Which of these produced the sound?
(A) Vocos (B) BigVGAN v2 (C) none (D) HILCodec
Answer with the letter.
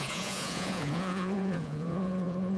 A